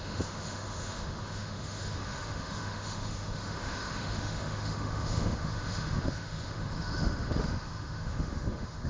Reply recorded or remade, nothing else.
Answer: remade